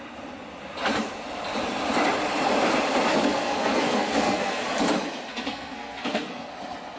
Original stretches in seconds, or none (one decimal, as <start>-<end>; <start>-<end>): 0.0-3.1; 4.6-5.3; 6.5-7.0